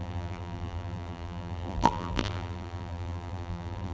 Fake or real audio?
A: fake